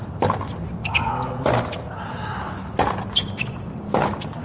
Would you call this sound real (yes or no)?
yes